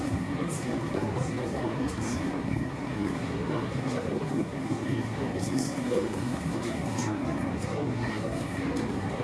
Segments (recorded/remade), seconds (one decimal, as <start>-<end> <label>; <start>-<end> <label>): 0.0-9.2 remade